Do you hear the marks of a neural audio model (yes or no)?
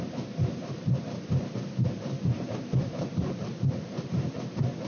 yes